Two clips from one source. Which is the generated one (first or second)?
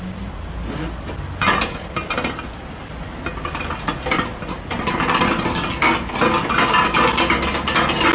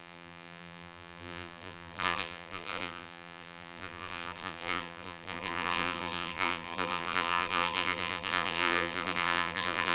second